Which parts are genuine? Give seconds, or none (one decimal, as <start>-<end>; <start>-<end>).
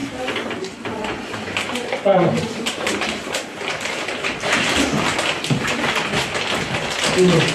0.0-2.1; 4.4-7.5